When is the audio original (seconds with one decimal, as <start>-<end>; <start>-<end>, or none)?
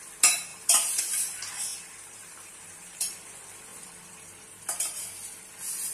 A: 0.0-0.5; 1.0-1.7; 3.2-3.7; 5.0-5.9